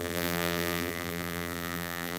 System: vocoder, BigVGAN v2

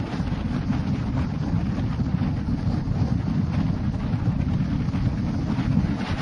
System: none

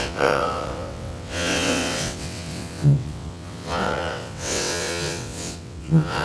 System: vocoder, WaveNeXt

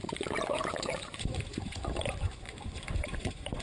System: vocoder, Vocos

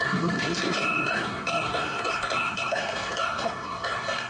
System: codec, SNAC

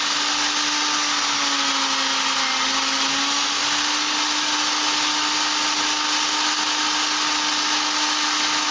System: none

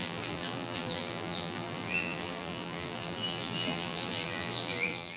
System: vocoder, BigVGAN v2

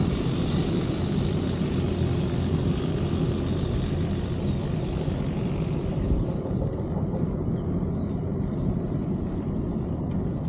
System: none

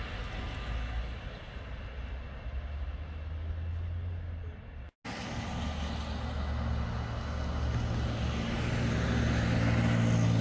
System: none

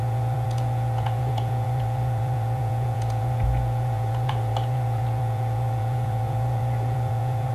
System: vocoder, Vocos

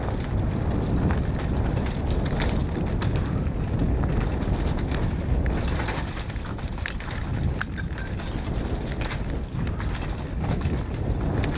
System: none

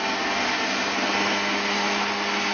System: none